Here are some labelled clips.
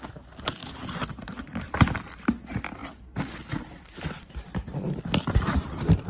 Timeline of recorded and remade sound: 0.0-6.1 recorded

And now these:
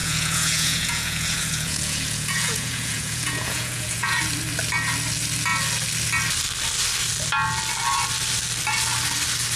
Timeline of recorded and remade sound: 0.0-4.2 remade; 4.2-9.6 recorded

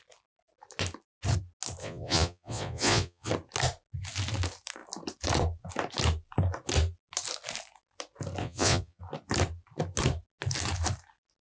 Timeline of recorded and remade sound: 0.0-1.8 recorded; 1.8-3.3 remade; 3.3-8.4 recorded; 8.4-9.0 remade; 9.0-11.4 recorded

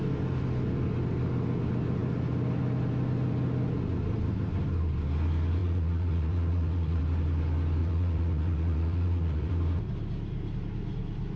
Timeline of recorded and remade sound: 0.0-5.6 recorded; 5.6-7.0 remade; 7.0-7.8 recorded; 7.8-9.5 remade; 9.5-11.4 recorded

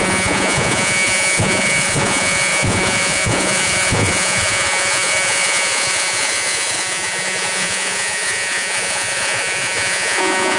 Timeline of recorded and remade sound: 0.0-10.6 remade

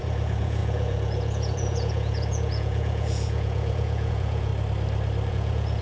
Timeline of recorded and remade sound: 0.0-4.5 remade; 4.5-5.3 recorded; 5.3-5.8 remade

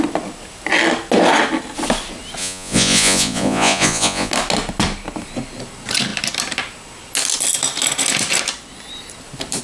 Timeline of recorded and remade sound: 0.0-2.4 recorded; 2.4-4.3 remade; 4.3-9.6 recorded

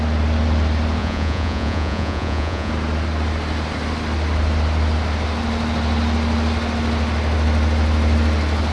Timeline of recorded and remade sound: 0.0-1.0 recorded; 1.0-2.7 remade; 2.7-8.7 recorded